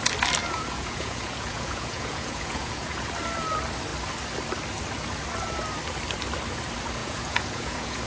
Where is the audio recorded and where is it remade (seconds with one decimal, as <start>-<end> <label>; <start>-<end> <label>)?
0.0-0.4 recorded; 0.4-3.1 remade; 3.1-7.0 recorded; 7.0-8.1 remade